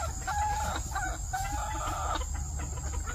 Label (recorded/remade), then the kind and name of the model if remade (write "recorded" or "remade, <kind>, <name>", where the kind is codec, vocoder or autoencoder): recorded